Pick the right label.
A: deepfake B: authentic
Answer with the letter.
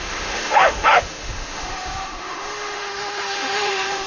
A